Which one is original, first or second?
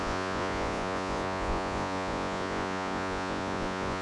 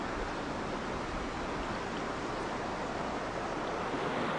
second